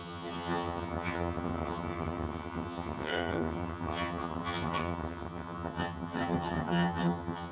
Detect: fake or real fake